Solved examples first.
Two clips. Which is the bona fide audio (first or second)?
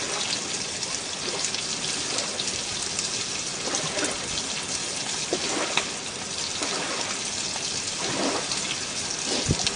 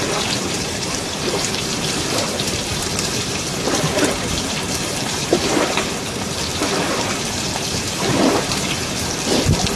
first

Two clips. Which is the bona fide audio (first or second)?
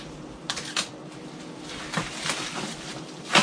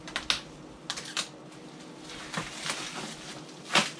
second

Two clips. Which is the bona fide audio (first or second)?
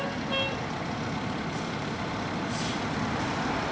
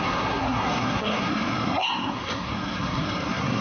first